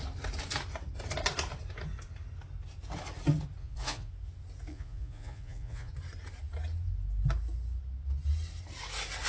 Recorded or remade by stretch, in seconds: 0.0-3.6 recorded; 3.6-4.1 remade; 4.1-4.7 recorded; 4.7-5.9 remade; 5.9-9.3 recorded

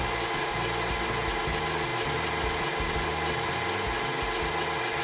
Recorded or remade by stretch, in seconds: 0.0-5.0 recorded

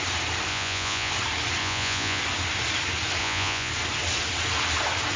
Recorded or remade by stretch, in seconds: 0.0-0.5 recorded; 0.5-1.1 remade; 1.1-1.6 recorded; 1.6-2.2 remade; 2.2-3.2 recorded; 3.2-3.7 remade; 3.7-5.2 recorded

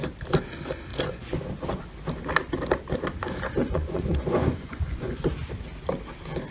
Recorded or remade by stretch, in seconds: 0.0-0.9 recorded; 0.9-1.5 remade; 1.5-3.6 recorded; 3.6-5.3 remade; 5.3-6.5 recorded

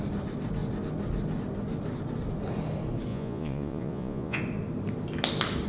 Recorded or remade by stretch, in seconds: 0.0-3.1 recorded; 3.1-4.4 remade; 4.4-5.7 recorded

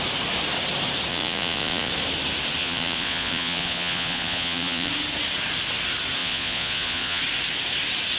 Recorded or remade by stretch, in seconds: 0.0-1.1 recorded; 1.1-1.9 remade; 1.9-2.6 recorded; 2.6-4.9 remade; 4.9-6.2 recorded; 6.2-7.2 remade; 7.2-8.2 recorded

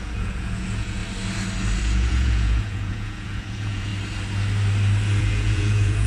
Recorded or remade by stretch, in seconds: 0.0-1.0 remade; 1.0-1.8 recorded; 1.8-3.9 remade; 3.9-5.2 recorded; 5.2-6.1 remade

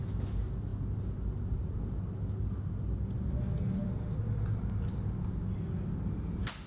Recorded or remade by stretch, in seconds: 0.0-6.7 recorded